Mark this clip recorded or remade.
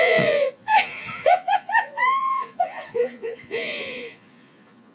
remade